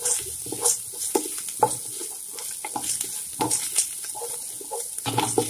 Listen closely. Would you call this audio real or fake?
real